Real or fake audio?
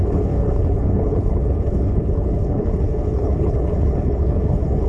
fake